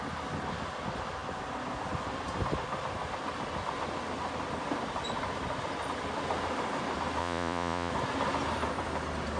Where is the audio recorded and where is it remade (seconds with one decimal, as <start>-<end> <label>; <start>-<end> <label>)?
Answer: 0.0-7.2 recorded; 7.2-7.9 remade; 7.9-9.4 recorded